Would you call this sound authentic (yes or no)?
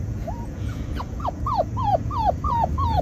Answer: no